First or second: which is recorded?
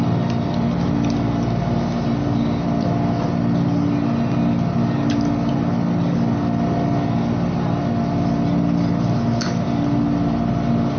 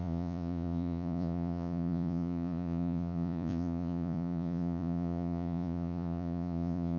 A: first